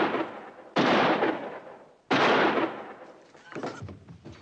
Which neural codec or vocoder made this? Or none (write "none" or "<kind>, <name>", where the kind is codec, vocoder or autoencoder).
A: none